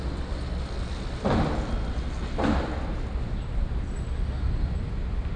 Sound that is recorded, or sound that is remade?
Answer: recorded